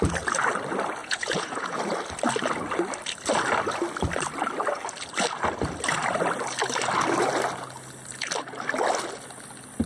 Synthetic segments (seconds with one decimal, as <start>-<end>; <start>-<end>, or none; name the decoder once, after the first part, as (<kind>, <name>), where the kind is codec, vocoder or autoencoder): 1.0-1.8 (vocoder, Vocos)